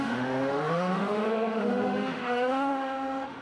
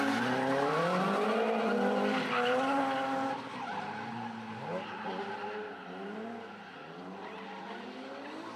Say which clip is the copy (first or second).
first